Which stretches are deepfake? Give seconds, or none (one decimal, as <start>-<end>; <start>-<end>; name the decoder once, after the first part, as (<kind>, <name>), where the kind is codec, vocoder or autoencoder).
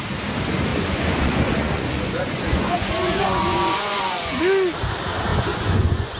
0.7-4.4 (vocoder, Vocos); 5.3-6.2